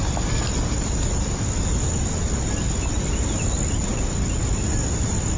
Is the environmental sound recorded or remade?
recorded